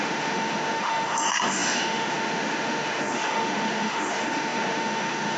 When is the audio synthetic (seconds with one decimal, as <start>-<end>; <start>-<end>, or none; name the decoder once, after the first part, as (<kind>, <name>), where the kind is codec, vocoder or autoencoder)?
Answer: 0.0-5.4 (autoencoder, DAC-VAE)